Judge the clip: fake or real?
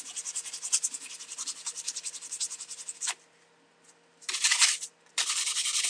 real